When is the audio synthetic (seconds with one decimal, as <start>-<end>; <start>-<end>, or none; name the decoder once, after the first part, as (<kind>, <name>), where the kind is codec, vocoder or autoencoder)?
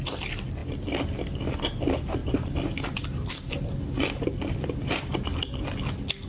none